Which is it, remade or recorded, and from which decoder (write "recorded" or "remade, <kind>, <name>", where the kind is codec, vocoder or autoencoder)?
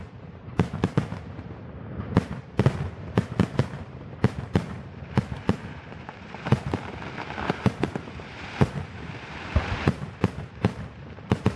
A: remade, vocoder, BigVGAN v2